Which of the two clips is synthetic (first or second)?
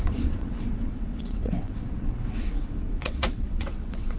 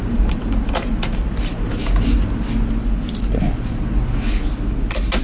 first